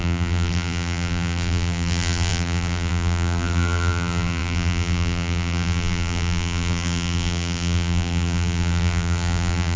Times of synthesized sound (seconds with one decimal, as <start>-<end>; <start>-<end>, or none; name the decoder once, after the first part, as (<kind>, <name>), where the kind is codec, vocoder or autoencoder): 0.0-9.8 (vocoder, BigVGAN v2)